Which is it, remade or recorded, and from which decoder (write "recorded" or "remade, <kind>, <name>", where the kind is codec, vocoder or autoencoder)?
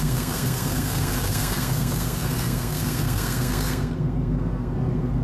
remade, codec, SNAC